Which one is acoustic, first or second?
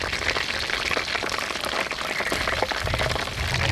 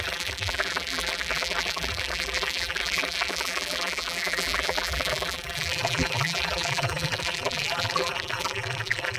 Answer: first